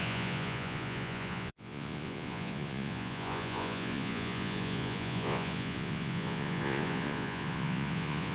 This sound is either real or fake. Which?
fake